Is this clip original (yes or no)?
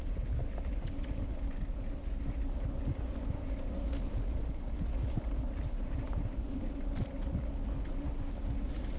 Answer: yes